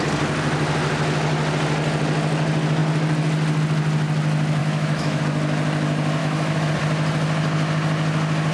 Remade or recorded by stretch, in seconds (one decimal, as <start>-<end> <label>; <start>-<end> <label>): 0.0-4.6 recorded; 4.6-5.2 remade; 5.2-6.2 recorded; 6.2-6.7 remade; 6.7-8.5 recorded